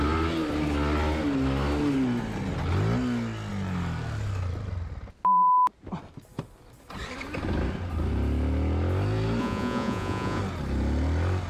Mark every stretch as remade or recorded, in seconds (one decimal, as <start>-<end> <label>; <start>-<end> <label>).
0.0-9.4 recorded; 9.4-10.4 remade; 10.4-11.5 recorded